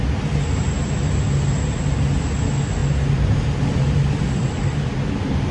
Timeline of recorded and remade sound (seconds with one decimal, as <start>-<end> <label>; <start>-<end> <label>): 0.0-5.5 recorded

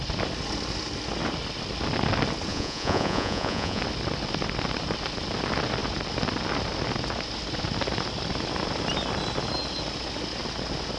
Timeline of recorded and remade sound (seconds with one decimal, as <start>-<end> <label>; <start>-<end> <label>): 0.0-2.5 recorded; 2.5-3.8 remade; 3.8-11.0 recorded